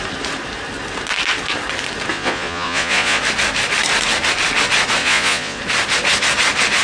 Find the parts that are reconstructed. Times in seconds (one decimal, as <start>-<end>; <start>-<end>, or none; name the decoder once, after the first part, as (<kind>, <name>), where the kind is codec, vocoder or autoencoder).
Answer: 2.1-3.2 (vocoder, Vocos); 5.0-5.6